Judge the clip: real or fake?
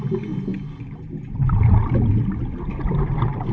real